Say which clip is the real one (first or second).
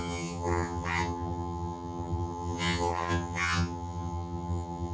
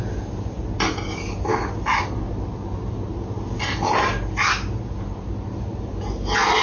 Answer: second